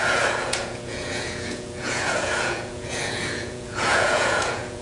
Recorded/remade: remade